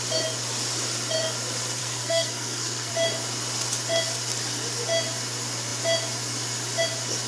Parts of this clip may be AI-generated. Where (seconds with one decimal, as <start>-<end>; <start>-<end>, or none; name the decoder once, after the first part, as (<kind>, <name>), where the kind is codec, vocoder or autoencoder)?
1.8-2.9 (codec, SNAC)